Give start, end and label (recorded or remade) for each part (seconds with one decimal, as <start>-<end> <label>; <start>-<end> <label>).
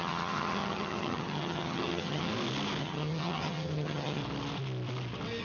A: 0.0-2.3 remade; 2.3-2.8 recorded; 2.8-4.2 remade; 4.2-5.4 recorded